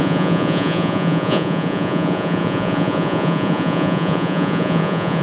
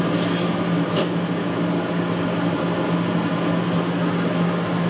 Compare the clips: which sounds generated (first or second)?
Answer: first